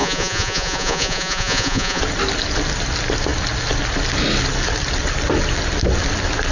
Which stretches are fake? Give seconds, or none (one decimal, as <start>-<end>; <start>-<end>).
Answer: 0.0-2.0